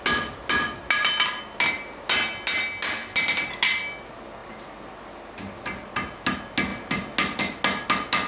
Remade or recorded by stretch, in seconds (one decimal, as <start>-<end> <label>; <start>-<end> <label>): 0.0-8.3 recorded

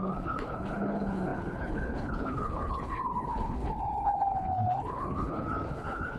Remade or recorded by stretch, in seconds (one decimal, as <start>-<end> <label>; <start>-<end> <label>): 0.0-6.2 remade

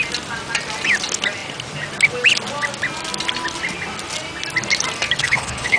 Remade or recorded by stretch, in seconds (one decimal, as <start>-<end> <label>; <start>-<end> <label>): 0.0-5.2 recorded; 5.2-5.8 remade

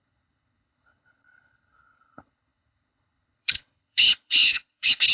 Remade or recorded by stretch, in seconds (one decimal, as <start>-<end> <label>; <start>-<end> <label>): 0.0-5.1 remade

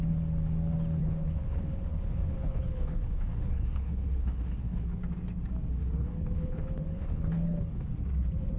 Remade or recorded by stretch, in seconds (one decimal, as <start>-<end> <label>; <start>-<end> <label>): 0.0-1.0 recorded; 1.0-5.0 remade; 5.0-5.8 recorded; 5.8-7.9 remade; 7.9-8.6 recorded

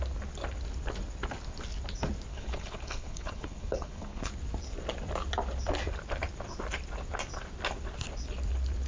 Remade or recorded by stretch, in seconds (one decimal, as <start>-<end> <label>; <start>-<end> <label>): 0.0-2.3 recorded; 2.3-4.3 remade; 4.3-8.9 recorded

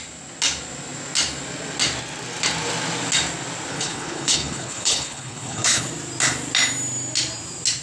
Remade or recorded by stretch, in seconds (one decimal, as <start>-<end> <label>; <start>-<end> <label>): 0.0-3.7 recorded; 3.7-5.9 remade; 5.9-7.8 recorded

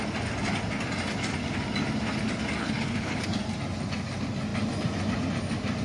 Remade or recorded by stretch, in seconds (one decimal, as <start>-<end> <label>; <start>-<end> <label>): 0.0-2.6 recorded; 2.6-3.2 remade; 3.2-5.8 recorded